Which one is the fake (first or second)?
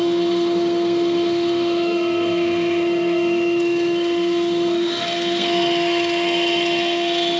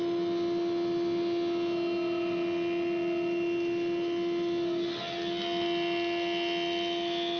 first